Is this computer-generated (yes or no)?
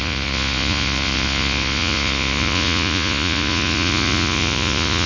yes